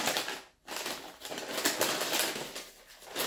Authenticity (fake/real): real